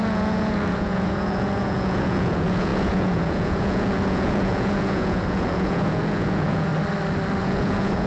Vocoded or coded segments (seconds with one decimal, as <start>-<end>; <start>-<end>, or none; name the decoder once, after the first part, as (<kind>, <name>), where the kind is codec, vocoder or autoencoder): 0.0-6.7 (vocoder, Vocos); 7.4-8.1